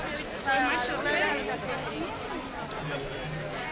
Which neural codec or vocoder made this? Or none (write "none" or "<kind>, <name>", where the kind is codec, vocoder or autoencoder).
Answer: none